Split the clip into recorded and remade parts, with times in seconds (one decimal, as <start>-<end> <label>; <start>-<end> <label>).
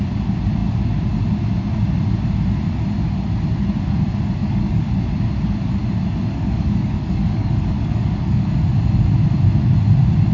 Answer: 0.0-4.4 recorded; 4.4-5.0 remade; 5.0-6.3 recorded; 6.3-8.5 remade; 8.5-10.3 recorded